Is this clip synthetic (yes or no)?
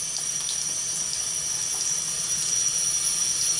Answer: no